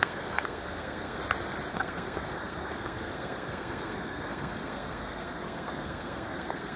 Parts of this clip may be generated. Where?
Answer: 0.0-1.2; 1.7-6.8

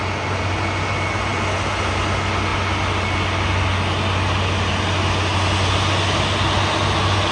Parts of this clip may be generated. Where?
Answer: none

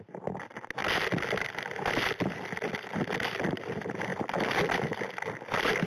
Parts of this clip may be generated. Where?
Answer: none

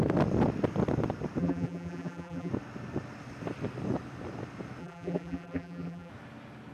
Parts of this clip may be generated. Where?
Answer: 1.4-2.5; 4.8-6.1

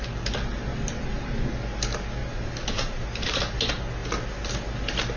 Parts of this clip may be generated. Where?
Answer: 0.7-1.4; 2.2-3.4

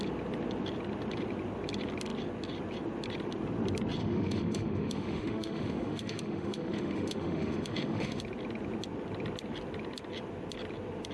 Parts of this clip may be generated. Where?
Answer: 4.0-8.2

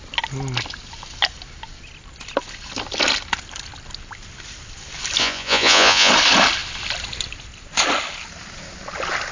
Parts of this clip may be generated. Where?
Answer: 5.2-6.1

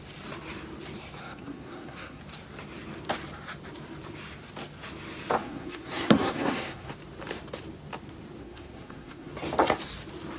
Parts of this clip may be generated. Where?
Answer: 1.2-2.2; 5.4-6.9; 8.4-9.3